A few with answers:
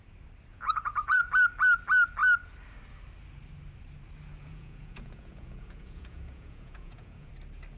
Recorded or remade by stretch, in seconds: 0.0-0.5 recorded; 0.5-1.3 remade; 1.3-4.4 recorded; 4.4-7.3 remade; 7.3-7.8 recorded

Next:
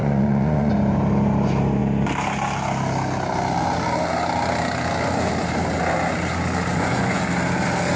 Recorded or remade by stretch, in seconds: 0.0-0.7 remade; 0.7-6.7 recorded; 6.7-7.2 remade; 7.2-8.0 recorded

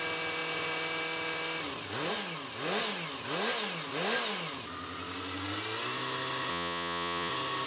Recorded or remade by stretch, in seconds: 0.0-6.5 recorded; 6.5-7.3 remade; 7.3-7.7 recorded

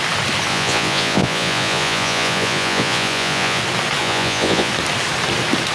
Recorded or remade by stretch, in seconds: 0.0-0.5 recorded; 0.5-3.6 remade; 3.6-4.0 recorded; 4.0-4.7 remade; 4.7-5.7 recorded

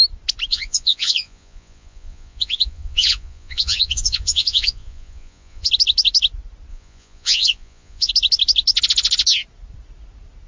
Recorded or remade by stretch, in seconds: 0.0-0.5 recorded; 0.5-5.7 remade; 5.7-6.7 recorded; 6.7-8.1 remade; 8.1-10.5 recorded

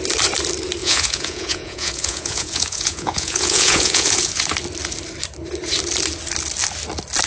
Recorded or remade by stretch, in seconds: 0.0-0.8 recorded; 0.8-4.4 remade; 4.4-7.3 recorded

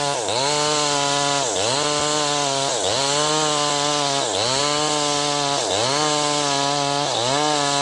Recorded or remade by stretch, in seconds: 0.0-7.8 recorded

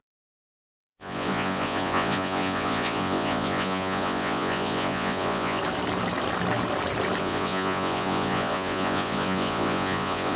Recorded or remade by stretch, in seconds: 0.0-5.6 remade; 5.6-7.2 recorded; 7.2-10.4 remade